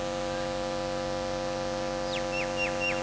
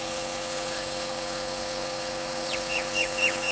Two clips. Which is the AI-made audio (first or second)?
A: second